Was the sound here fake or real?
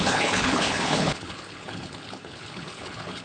fake